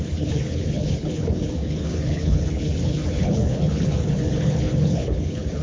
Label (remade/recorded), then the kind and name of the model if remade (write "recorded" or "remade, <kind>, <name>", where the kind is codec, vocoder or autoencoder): remade, codec, HILCodec